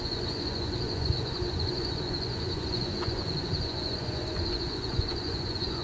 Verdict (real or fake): fake